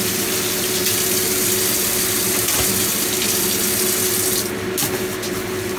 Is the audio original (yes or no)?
yes